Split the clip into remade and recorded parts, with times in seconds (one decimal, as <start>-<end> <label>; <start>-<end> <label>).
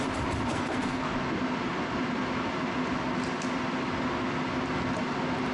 0.0-0.5 recorded; 0.5-1.0 remade; 1.0-5.5 recorded